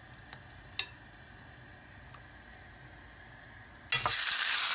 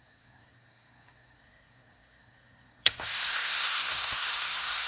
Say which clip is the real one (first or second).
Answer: first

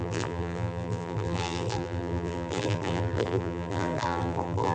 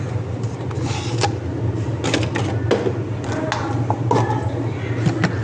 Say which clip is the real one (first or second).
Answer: second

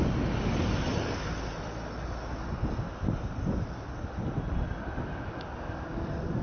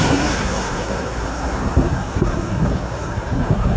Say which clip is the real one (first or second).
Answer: first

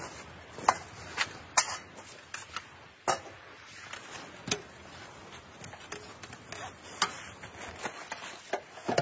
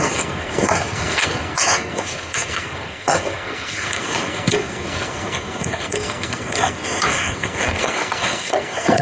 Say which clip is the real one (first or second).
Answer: first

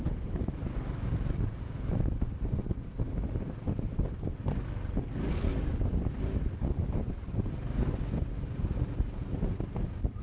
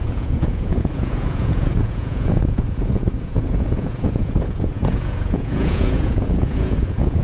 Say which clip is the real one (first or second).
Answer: first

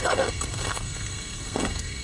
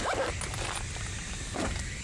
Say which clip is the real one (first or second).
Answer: second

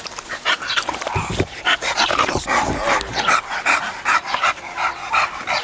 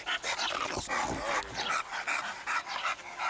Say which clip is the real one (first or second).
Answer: second